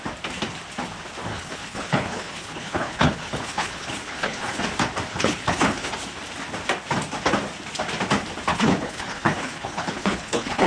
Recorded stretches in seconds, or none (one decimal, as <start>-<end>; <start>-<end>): 0.0-1.3; 4.6-5.1; 5.9-8.5